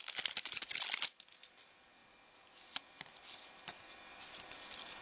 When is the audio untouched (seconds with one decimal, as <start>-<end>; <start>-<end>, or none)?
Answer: 0.0-5.0